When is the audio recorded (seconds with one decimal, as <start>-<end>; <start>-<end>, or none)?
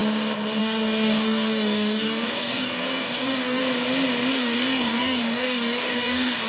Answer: 0.0-0.6; 3.6-4.3